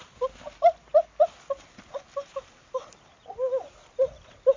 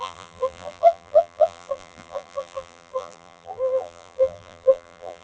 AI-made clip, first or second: second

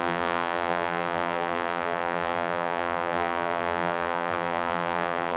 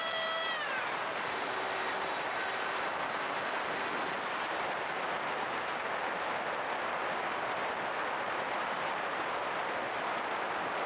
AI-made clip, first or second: first